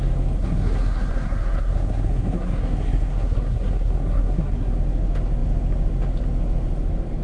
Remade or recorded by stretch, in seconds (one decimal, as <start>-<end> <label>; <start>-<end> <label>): 0.0-0.4 recorded; 0.4-4.7 remade; 4.7-7.2 recorded